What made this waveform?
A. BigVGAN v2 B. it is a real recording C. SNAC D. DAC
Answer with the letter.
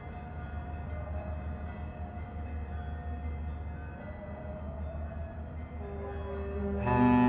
B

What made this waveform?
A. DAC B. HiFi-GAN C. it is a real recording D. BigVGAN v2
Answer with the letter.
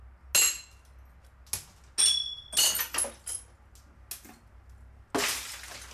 C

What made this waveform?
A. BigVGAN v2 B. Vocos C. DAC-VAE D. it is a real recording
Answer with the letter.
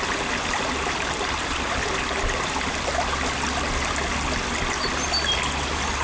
D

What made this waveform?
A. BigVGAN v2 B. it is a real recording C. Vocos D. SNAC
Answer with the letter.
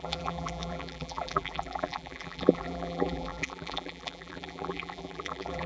A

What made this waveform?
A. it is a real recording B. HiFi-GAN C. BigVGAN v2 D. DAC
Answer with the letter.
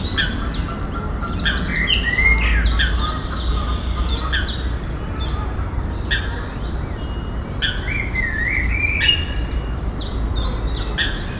A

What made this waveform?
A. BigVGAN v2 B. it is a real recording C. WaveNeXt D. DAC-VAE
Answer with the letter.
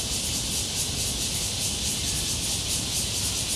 B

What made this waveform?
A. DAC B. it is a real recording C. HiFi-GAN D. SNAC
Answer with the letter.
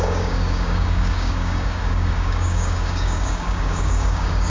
A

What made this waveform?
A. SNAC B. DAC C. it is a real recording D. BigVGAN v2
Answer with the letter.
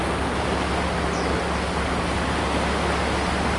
C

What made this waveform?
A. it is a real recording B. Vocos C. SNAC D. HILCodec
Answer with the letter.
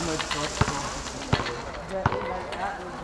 A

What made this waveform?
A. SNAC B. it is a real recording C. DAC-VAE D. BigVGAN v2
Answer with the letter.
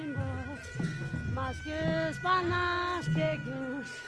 B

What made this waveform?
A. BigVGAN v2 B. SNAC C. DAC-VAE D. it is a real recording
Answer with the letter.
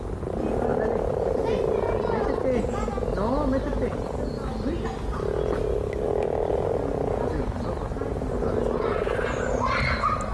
D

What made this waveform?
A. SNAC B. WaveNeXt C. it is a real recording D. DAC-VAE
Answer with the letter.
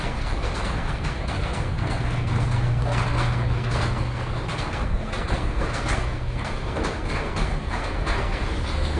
A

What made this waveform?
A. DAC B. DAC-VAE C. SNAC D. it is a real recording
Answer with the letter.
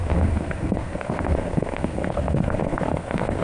C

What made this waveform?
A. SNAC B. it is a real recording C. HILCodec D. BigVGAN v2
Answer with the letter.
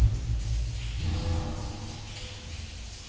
B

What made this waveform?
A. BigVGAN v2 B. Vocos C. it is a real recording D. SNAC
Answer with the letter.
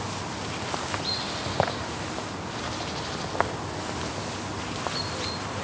C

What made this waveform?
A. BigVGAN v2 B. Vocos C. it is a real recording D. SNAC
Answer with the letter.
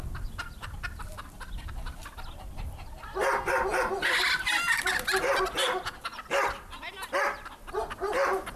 C